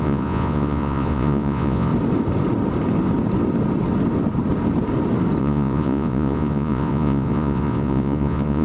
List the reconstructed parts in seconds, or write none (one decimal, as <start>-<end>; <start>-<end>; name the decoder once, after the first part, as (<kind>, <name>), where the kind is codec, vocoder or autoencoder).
0.0-1.9 (vocoder, Vocos); 5.4-8.6

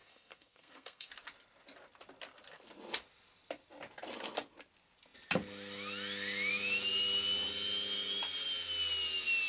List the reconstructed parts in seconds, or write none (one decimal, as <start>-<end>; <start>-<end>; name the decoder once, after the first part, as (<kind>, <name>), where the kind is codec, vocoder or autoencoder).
0.0-1.1 (codec, SNAC)

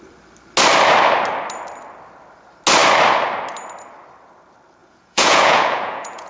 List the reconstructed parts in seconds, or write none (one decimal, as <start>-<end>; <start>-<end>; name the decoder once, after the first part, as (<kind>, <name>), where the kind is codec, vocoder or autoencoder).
4.8-6.3 (vocoder, Vocos)

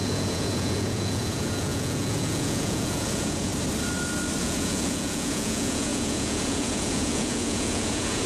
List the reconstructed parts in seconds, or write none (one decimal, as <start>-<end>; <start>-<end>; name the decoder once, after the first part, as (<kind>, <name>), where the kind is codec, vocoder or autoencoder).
0.0-3.5 (vocoder, Vocos); 4.4-8.3

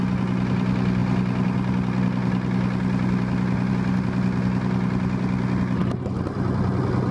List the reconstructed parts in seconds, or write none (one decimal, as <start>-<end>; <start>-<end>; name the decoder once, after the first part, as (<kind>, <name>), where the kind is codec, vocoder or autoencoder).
none

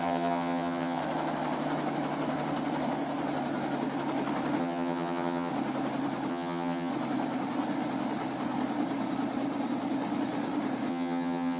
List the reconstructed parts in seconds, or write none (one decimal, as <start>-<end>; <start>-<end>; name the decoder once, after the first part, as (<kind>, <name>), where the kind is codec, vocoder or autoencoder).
0.0-1.0 (vocoder, HiFi-GAN); 4.6-5.5; 6.3-6.9; 10.9-11.6

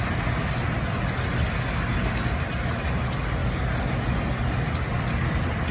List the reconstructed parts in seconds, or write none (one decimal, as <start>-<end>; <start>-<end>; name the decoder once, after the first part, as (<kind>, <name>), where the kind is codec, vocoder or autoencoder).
none